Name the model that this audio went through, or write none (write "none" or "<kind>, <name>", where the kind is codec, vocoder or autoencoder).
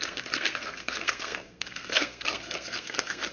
codec, SNAC